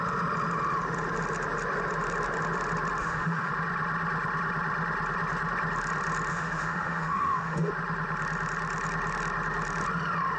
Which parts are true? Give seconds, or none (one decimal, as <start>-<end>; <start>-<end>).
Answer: 0.0-3.0; 3.5-6.3; 7.7-10.4

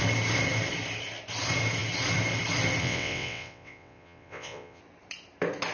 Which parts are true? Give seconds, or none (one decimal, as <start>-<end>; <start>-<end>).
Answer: 0.0-2.8; 4.8-5.7

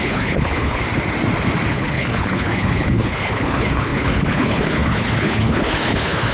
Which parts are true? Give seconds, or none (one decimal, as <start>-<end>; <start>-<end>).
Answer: 0.8-1.7

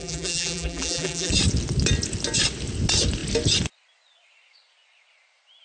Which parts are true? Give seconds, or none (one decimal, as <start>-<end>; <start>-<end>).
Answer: 1.3-5.6

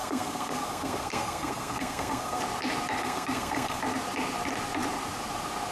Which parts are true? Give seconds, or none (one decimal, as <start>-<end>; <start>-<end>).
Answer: 2.4-3.0; 3.8-5.7

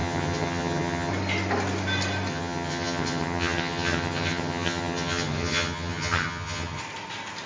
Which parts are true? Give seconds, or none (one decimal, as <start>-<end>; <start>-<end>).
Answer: 1.1-2.3; 6.8-7.5